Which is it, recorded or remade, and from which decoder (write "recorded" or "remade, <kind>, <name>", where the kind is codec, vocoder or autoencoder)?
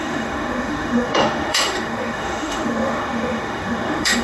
remade, autoencoder, DAC-VAE